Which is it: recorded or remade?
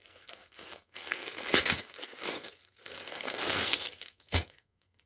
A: remade